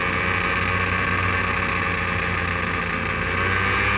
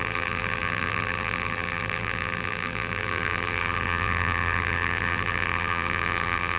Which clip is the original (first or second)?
first